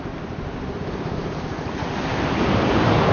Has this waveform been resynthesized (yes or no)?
no